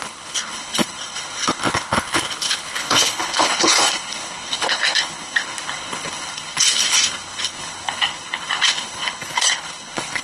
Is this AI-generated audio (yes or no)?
yes